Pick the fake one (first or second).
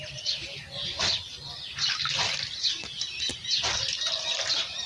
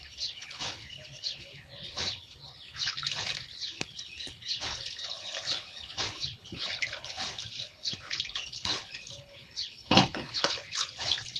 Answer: second